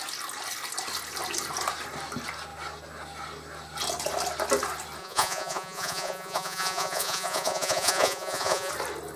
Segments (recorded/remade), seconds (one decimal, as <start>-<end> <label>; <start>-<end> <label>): 0.0-5.0 recorded; 5.0-8.7 remade; 8.7-9.2 recorded